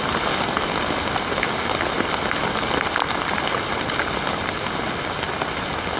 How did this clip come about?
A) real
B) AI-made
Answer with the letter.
A